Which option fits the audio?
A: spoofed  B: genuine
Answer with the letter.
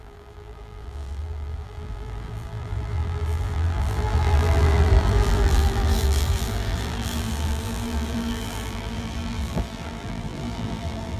A